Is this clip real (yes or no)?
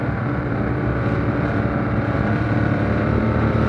no